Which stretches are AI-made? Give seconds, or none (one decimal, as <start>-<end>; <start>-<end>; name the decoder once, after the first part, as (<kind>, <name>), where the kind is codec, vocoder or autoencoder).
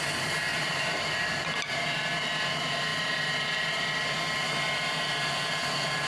0.5-1.3 (vocoder, BigVGAN v2)